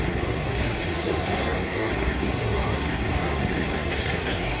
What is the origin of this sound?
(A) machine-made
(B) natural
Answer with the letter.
A